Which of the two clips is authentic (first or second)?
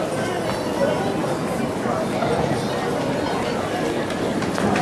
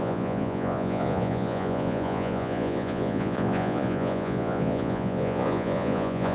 first